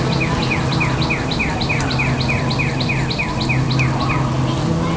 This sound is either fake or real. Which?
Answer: real